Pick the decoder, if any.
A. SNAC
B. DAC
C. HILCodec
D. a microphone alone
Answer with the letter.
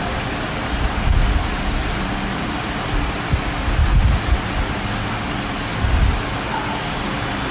D